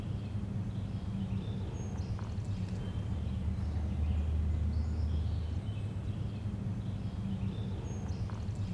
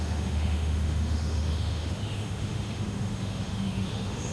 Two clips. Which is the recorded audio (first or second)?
first